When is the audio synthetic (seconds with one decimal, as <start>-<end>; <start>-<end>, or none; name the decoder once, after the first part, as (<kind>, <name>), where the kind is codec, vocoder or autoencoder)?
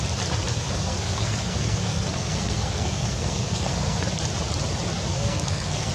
0.5-4.0 (codec, SNAC); 5.1-5.9